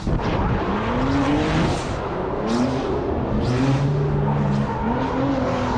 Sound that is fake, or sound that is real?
real